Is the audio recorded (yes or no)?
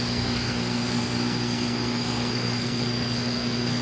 no